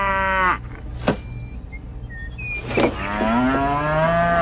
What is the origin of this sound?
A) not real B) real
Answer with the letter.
B